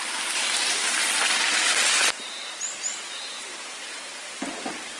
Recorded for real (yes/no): yes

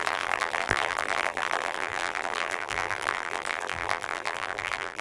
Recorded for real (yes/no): no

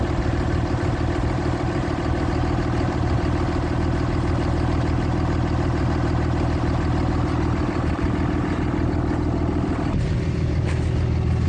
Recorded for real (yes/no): yes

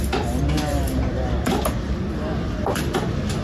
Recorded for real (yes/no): yes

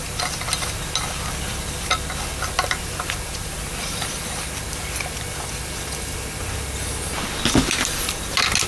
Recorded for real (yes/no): no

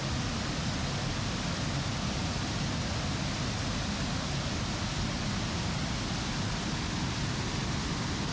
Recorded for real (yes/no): yes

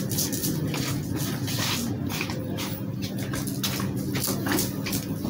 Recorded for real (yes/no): yes